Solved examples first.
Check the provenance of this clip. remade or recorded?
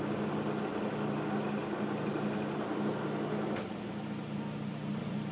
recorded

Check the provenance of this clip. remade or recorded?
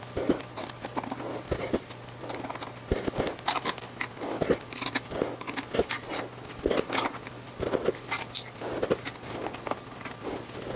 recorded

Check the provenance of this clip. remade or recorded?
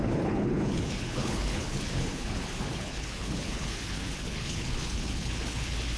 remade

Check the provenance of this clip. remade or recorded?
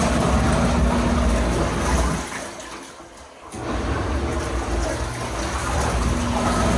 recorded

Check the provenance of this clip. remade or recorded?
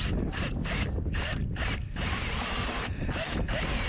remade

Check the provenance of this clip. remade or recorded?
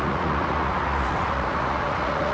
remade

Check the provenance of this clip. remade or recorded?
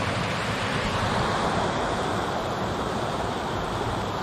remade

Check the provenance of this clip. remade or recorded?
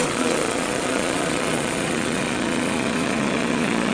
remade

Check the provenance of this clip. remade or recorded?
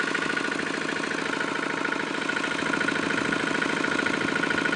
recorded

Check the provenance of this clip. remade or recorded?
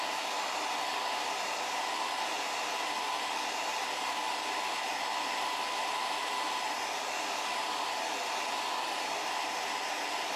remade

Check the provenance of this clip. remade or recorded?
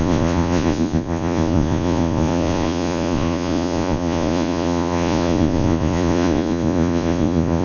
remade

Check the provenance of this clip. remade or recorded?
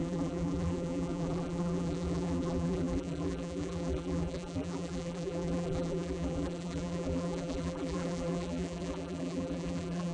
remade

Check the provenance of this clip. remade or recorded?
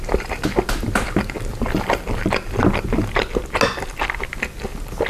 recorded